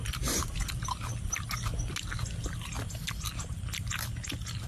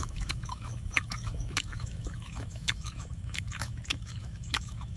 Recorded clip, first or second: first